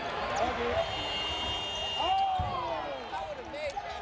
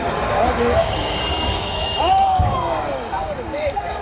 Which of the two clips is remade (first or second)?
second